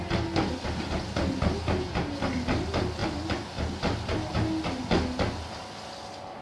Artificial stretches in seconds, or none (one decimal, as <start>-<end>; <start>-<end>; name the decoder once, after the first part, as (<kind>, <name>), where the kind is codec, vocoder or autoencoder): none